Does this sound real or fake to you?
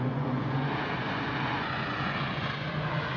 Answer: fake